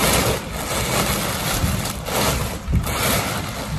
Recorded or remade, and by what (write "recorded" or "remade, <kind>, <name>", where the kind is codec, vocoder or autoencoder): recorded